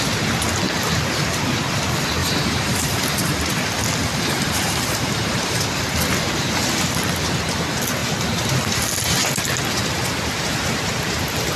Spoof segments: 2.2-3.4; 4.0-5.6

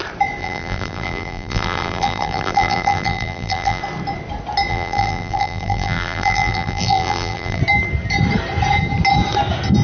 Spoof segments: 0.4-3.8; 4.7-7.6

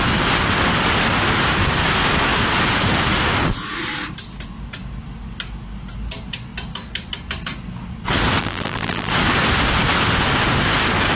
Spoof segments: 8.4-9.1

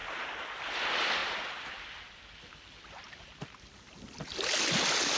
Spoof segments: none

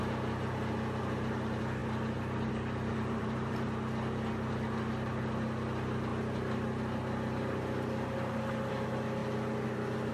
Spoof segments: 2.9-3.7

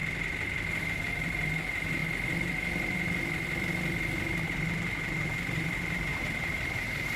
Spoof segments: 0.8-2.0; 4.4-7.2

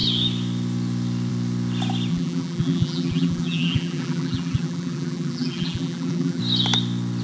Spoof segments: 2.1-6.4